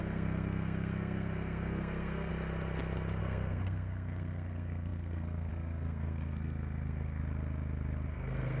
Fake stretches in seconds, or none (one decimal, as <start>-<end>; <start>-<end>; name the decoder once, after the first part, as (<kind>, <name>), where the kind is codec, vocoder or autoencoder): 0.0-2.3 (codec, SNAC); 3.2-7.2; 8.1-8.6